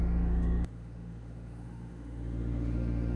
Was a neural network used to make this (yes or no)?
yes